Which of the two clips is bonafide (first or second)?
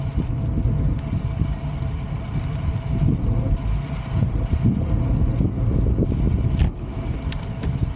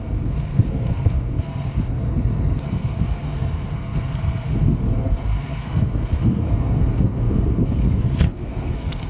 first